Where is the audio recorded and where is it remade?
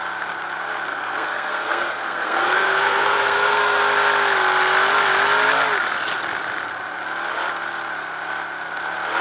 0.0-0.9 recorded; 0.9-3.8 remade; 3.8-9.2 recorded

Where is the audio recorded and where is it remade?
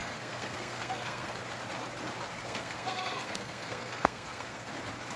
0.0-1.4 remade; 1.4-2.4 recorded; 2.4-4.7 remade; 4.7-5.2 recorded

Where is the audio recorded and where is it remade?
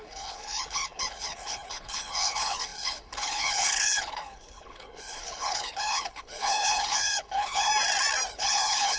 0.0-7.7 remade; 7.7-8.3 recorded; 8.3-9.0 remade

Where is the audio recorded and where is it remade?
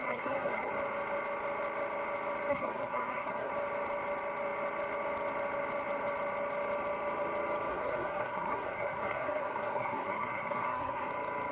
0.0-0.7 remade; 0.7-2.5 recorded; 2.5-3.5 remade; 3.5-7.7 recorded; 7.7-11.1 remade; 11.1-11.5 recorded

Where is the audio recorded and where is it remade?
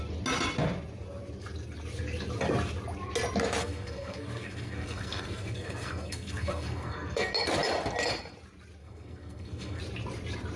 0.0-3.6 recorded; 3.6-7.3 remade; 7.3-8.8 recorded; 8.8-9.8 remade; 9.8-10.6 recorded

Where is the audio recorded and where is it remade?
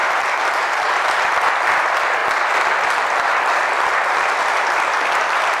0.0-0.9 remade; 0.9-5.6 recorded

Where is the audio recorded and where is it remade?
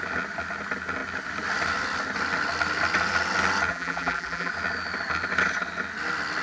0.0-3.7 recorded; 3.7-4.5 remade; 4.5-6.4 recorded